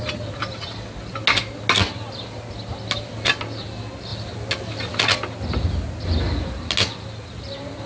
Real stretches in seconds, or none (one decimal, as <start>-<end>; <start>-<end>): 0.0-7.9